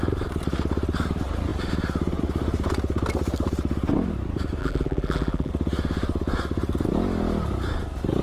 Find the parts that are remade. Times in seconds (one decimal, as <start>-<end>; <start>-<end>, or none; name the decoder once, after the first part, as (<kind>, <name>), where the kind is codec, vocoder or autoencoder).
4.6-5.5 (vocoder, BigVGAN v2)